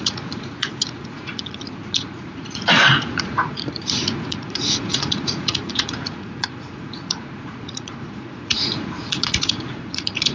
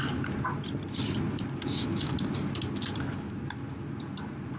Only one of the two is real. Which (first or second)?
second